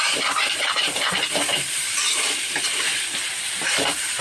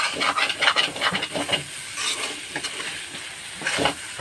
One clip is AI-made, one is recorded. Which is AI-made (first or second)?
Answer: first